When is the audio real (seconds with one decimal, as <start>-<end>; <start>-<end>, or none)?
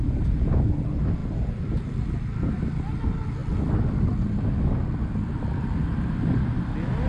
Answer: 0.0-7.1